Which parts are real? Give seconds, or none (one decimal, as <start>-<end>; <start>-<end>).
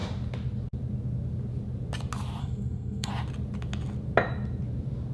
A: 0.0-2.4; 3.1-5.1